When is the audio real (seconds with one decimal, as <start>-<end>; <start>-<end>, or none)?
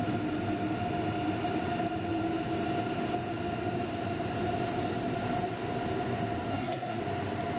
0.0-6.5; 7.0-7.6